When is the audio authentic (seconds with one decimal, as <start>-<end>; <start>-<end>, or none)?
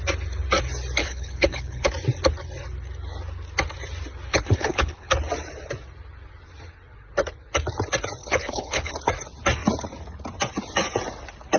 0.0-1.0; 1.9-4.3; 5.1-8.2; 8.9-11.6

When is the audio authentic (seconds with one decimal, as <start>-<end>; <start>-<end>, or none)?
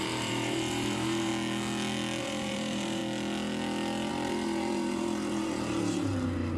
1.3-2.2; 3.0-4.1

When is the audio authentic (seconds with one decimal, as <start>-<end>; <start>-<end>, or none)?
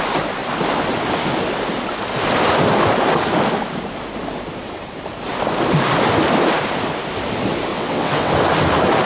0.0-7.7; 8.3-9.1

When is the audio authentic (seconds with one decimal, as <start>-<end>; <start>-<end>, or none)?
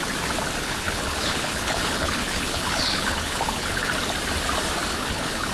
0.0-0.6; 3.9-4.9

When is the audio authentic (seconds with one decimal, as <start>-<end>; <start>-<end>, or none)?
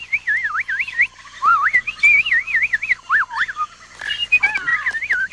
none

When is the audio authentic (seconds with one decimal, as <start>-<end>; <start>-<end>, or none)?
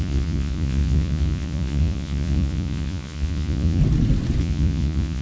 3.8-4.4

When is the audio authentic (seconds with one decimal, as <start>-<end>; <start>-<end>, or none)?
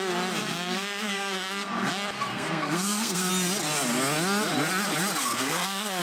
0.0-0.4; 1.9-2.3; 3.3-5.2